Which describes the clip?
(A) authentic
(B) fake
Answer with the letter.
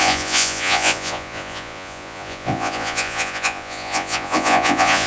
B